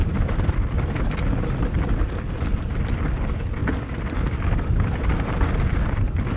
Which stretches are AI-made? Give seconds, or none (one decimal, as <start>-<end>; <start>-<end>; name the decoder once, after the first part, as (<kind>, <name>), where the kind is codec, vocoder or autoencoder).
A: none